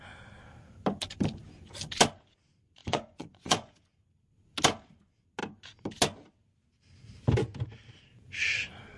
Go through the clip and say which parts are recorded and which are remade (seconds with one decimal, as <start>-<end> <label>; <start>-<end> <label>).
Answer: 0.0-2.8 recorded; 2.8-3.7 remade; 3.7-9.0 recorded